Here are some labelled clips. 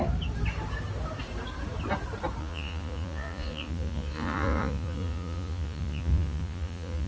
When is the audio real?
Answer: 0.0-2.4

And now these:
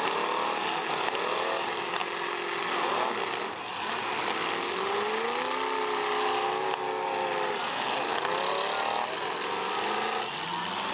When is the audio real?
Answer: 0.0-10.9

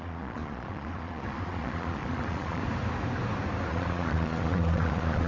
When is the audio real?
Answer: 2.6-3.7